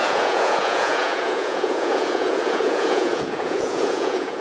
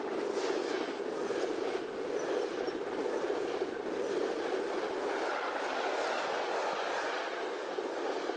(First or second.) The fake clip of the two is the first